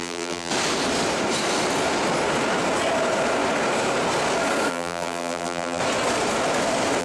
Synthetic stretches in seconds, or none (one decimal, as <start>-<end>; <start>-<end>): 0.0-0.5; 4.7-5.8